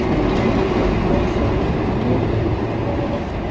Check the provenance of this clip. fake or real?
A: real